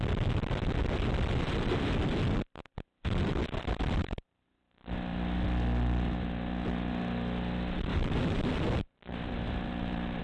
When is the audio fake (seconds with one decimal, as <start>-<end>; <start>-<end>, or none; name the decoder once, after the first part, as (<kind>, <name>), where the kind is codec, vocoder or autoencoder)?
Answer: 7.9-10.2 (vocoder, BigVGAN v2)